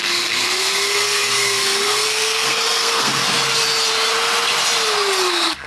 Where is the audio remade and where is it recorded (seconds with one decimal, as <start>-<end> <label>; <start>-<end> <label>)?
0.0-3.2 remade; 3.2-5.3 recorded; 5.3-5.7 remade